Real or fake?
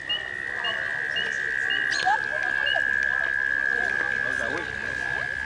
real